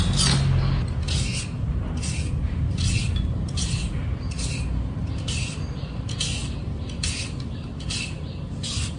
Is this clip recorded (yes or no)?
yes